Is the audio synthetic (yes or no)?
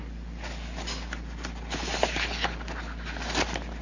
no